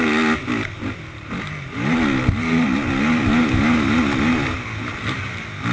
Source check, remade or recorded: recorded